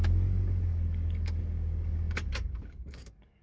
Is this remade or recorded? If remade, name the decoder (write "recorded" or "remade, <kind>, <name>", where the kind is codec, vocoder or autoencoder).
remade, codec, DAC